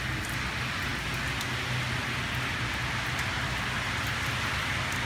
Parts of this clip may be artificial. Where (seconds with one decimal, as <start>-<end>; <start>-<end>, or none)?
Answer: none